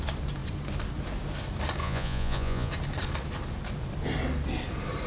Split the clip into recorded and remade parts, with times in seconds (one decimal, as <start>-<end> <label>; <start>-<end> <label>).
0.0-1.8 recorded; 1.8-2.7 remade; 2.7-5.1 recorded